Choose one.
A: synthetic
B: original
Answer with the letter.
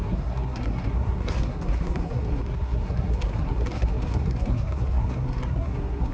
A